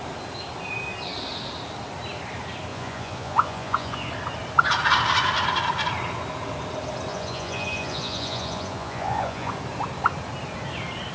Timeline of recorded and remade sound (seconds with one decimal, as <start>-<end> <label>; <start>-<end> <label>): 0.0-2.7 recorded; 2.7-4.1 remade; 4.1-7.1 recorded; 7.1-9.5 remade; 9.5-11.1 recorded